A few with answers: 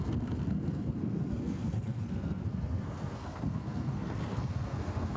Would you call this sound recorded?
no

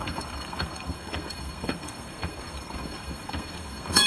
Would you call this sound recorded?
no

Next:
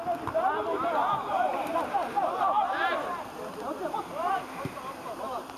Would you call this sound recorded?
yes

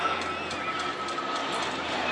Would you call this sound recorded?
yes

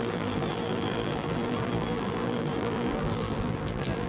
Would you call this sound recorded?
no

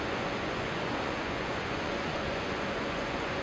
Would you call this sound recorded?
no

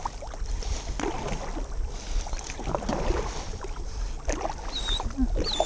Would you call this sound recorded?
yes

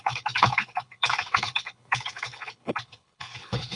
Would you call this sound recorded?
no